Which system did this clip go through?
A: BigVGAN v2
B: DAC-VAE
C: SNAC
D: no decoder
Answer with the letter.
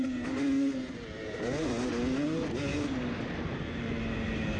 D